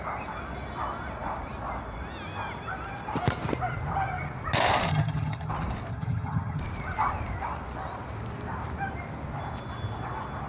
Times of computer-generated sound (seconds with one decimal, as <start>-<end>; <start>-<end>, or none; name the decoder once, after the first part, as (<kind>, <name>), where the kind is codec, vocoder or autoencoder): 4.9-5.5 (vocoder, HiFi-GAN); 5.9-6.6